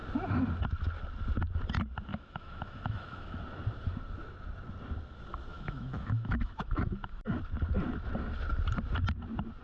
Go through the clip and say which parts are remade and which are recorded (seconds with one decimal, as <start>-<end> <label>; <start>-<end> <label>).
0.0-2.1 recorded; 2.1-3.4 remade; 3.4-5.5 recorded; 5.5-7.3 remade; 7.3-9.6 recorded